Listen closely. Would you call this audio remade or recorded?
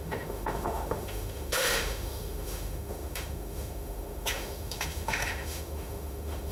remade